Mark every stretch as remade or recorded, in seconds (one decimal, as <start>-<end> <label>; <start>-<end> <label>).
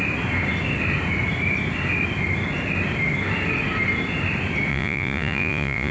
0.0-4.7 recorded; 4.7-5.9 remade